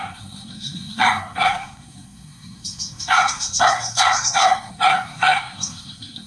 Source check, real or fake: fake